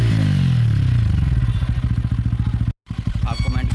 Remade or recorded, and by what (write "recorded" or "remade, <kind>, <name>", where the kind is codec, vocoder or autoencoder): recorded